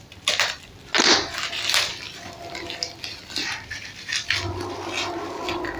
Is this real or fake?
real